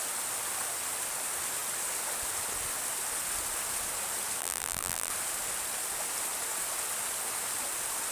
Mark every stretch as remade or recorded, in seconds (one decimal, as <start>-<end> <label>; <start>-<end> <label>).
0.0-4.4 recorded; 4.4-5.1 remade; 5.1-8.1 recorded